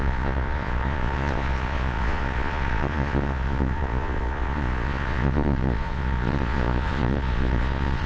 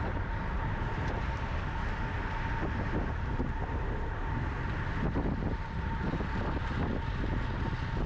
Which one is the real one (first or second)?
second